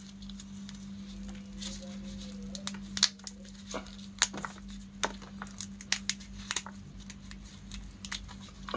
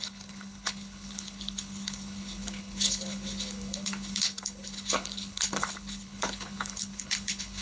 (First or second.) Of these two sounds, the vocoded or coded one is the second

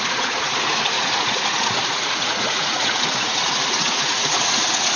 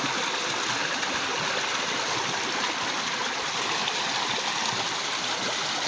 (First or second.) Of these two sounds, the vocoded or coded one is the first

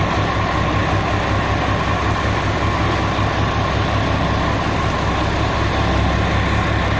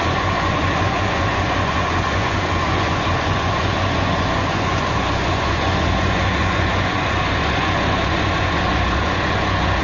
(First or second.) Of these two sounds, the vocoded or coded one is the second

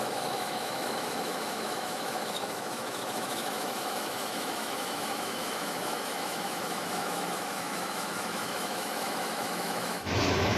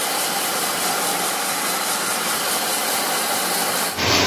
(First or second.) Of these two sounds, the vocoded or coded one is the first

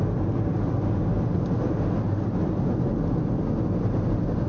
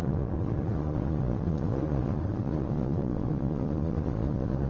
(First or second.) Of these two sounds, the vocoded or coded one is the second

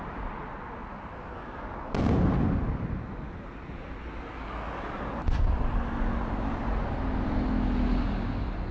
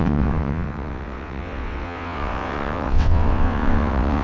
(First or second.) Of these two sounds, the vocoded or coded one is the second